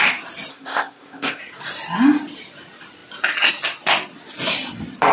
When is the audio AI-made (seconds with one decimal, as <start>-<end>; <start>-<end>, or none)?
0.5-1.4